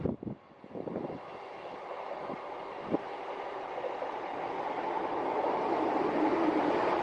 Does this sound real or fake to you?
real